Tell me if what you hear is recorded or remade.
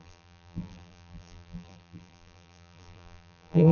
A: remade